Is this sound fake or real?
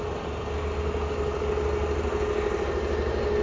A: real